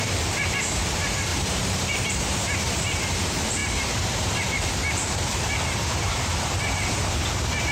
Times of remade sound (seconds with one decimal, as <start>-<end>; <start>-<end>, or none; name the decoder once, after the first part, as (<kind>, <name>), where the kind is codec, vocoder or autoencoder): 0.0-7.7 (vocoder, BigVGAN v2)